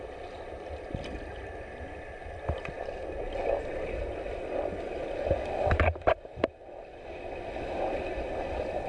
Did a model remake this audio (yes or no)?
no